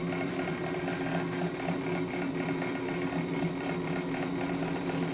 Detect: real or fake real